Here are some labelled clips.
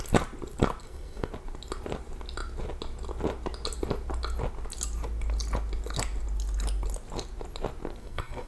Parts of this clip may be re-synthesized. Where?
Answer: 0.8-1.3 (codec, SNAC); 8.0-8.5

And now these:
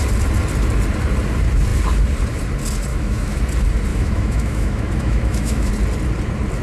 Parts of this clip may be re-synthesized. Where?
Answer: 2.9-3.4 (autoencoder, DAC-VAE); 3.9-5.7

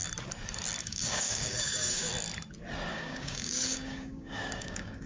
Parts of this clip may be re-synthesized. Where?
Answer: 0.8-2.1 (codec, DAC); 2.9-5.1

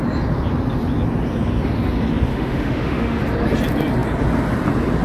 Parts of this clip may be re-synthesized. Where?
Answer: 2.3-3.2 (autoencoder, DAC-VAE)